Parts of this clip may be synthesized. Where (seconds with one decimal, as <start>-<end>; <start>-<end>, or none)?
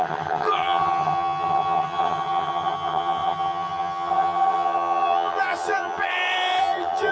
0.0-6.1; 6.6-7.1